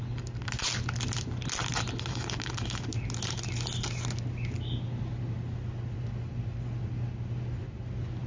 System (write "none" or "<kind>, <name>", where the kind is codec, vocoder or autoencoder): none